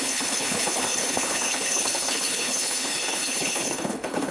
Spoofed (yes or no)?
yes